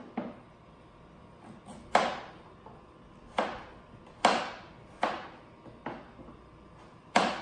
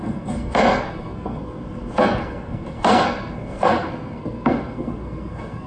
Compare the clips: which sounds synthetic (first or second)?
second